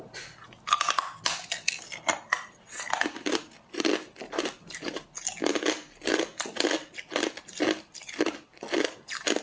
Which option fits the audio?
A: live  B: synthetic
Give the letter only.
A